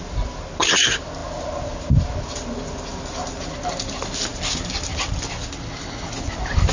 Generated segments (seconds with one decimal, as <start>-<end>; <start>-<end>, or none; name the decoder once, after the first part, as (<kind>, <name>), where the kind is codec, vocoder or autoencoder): none

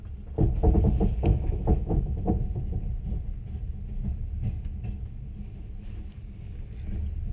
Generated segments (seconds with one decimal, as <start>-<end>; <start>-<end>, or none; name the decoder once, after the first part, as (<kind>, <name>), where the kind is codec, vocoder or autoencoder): 1.3-2.3 (autoencoder, DAC-VAE)